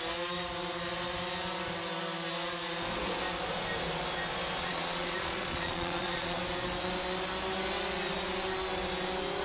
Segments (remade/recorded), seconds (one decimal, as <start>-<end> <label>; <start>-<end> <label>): 0.0-4.6 recorded; 4.6-6.4 remade; 6.4-9.4 recorded

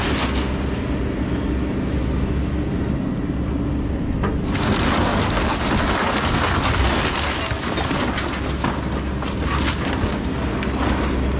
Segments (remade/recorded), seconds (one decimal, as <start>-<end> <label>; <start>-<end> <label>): 0.0-11.4 recorded

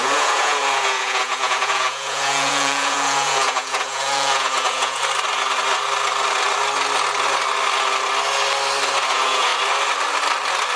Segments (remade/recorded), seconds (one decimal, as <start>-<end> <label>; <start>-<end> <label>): 0.0-5.0 remade; 5.0-9.1 recorded; 9.1-9.5 remade; 9.5-10.8 recorded

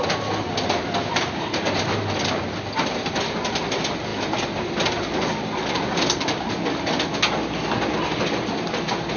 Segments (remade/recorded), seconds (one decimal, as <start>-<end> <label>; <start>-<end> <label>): 0.0-9.2 recorded